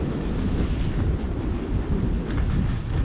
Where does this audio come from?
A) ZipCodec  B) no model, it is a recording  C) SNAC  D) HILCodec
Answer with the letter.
B